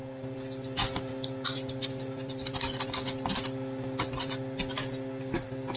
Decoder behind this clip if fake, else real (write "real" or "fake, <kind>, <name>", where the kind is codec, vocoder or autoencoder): real